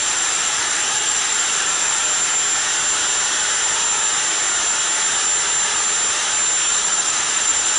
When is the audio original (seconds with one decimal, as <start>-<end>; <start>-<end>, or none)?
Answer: 2.0-6.7